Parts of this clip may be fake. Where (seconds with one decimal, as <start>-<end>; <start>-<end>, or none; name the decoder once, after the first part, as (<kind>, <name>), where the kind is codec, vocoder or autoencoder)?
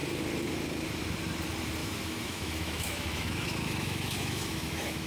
1.8-5.1 (autoencoder, DAC-VAE)